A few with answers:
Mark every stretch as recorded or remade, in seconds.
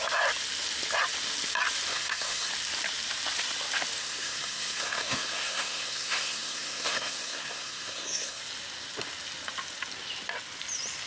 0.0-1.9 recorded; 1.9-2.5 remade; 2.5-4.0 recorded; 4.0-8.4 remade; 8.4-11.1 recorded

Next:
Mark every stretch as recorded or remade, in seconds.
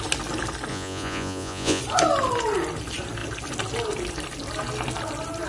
0.0-0.7 recorded; 0.7-1.8 remade; 1.8-5.5 recorded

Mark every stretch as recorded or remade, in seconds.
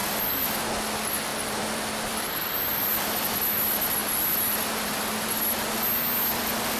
0.0-0.7 remade; 0.7-1.3 recorded; 1.3-3.3 remade; 3.3-4.0 recorded; 4.0-5.3 remade; 5.3-6.8 recorded